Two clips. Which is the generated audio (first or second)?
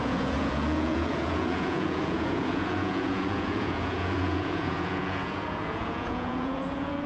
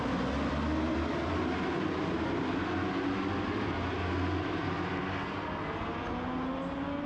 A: first